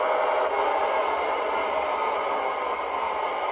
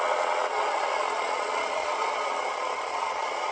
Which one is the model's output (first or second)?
second